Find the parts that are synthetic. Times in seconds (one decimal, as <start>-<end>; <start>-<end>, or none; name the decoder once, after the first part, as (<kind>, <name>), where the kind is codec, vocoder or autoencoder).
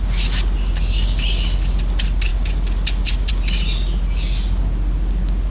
none